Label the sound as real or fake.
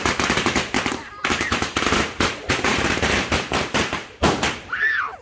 fake